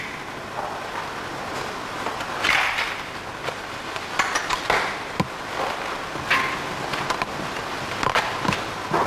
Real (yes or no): yes